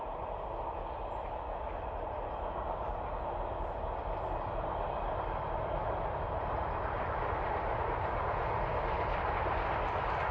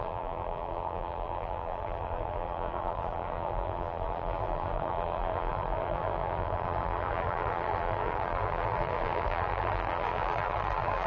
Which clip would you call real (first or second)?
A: first